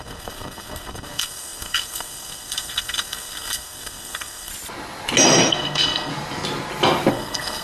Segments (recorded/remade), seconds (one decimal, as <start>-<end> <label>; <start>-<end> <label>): 0.0-4.5 remade; 4.5-5.5 recorded; 5.5-6.1 remade; 6.1-7.1 recorded; 7.1-7.6 remade